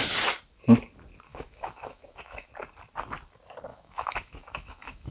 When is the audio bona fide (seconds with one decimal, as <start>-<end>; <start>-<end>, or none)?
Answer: 0.0-1.3; 2.5-3.7